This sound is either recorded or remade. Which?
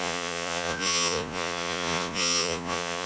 remade